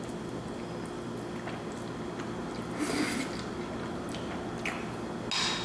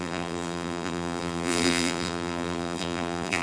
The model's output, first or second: second